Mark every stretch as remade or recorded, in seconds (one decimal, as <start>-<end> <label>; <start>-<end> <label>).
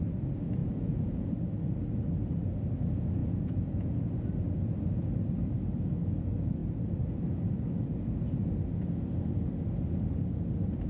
0.0-0.6 recorded; 0.6-1.3 remade; 1.3-3.2 recorded; 3.2-4.1 remade; 4.1-10.9 recorded